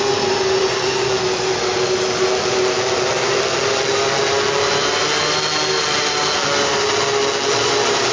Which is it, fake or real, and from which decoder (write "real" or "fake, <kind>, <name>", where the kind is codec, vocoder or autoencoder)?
real